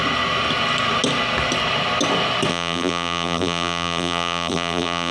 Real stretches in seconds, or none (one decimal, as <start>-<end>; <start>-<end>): 0.0-2.5